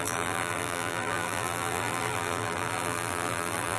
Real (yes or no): no